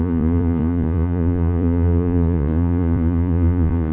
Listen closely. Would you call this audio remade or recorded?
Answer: remade